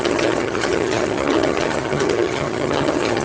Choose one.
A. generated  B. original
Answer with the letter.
A